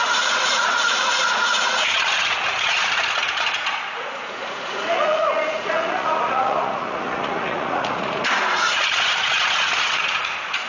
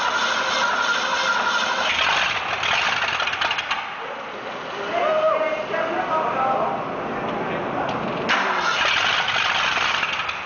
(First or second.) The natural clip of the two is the second